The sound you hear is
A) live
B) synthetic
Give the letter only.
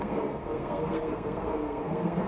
B